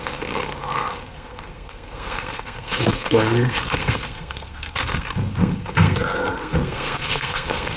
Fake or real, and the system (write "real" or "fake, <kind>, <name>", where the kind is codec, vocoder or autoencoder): fake, codec, SNAC